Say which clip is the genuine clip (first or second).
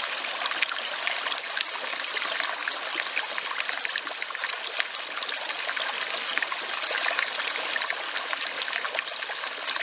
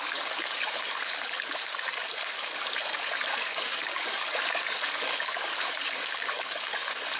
first